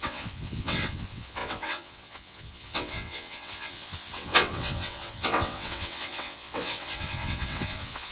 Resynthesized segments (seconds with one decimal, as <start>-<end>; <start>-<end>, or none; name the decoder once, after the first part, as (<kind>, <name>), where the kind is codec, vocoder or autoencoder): 0.0-8.1 (vocoder, WaveNeXt)